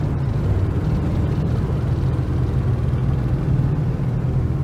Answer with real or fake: real